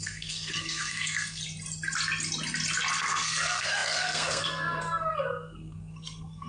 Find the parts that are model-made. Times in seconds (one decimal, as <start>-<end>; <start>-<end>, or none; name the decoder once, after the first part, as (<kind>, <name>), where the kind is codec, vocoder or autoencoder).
0.0-1.4 (codec, SNAC); 3.0-6.5